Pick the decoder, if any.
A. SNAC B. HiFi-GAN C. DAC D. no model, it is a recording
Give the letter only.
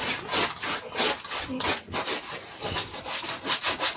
D